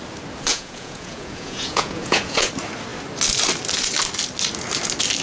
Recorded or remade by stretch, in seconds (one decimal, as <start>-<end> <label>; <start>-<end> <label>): 0.0-0.5 recorded; 0.5-2.5 remade; 2.5-5.2 recorded